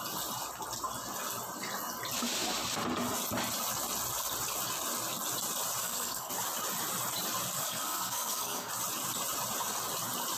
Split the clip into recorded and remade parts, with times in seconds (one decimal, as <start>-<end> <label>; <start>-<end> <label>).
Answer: 0.0-5.8 recorded; 5.8-6.3 remade; 6.3-7.6 recorded; 7.6-8.7 remade; 8.7-10.4 recorded